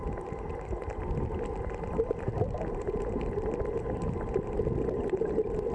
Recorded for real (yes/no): yes